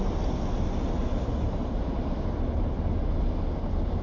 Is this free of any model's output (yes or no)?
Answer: yes